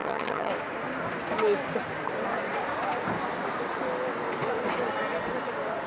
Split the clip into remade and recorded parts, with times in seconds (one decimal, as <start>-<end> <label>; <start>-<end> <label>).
0.0-0.5 remade; 0.5-5.9 recorded